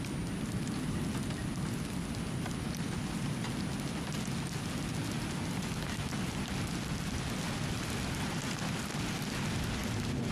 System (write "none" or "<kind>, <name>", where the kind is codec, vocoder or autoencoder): none